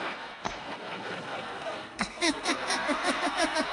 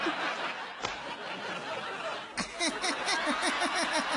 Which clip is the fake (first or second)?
first